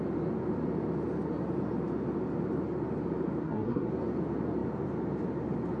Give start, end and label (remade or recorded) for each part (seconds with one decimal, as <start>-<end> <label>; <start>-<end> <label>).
0.0-3.4 recorded; 3.4-3.9 remade; 3.9-5.8 recorded